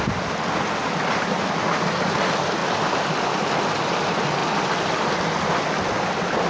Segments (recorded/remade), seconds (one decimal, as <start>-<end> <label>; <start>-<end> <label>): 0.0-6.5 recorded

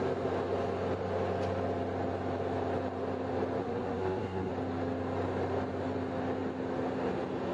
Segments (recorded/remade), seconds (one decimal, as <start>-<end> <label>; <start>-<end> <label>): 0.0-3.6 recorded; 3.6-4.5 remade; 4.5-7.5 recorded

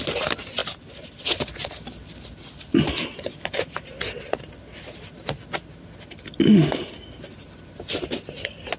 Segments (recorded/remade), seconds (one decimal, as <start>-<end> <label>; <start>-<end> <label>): 0.0-0.6 recorded; 0.6-1.2 remade; 1.2-8.8 recorded

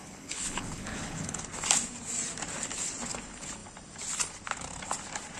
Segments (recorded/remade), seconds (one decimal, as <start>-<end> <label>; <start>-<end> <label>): 0.0-1.4 remade; 1.4-5.4 recorded

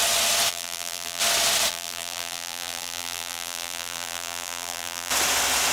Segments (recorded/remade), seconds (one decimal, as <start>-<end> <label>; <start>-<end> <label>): 0.0-0.5 recorded; 0.5-1.2 remade; 1.2-1.7 recorded; 1.7-5.1 remade; 5.1-5.7 recorded